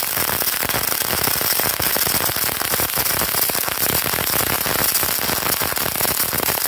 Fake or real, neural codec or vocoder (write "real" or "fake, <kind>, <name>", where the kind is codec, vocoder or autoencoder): real